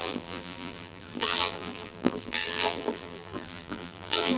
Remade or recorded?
remade